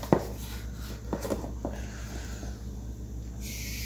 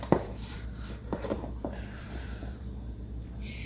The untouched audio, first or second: first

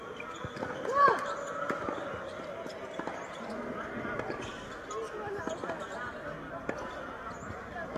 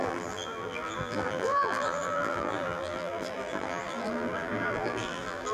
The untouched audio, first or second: first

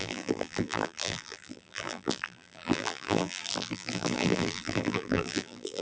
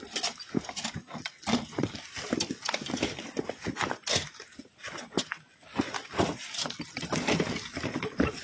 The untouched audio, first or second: second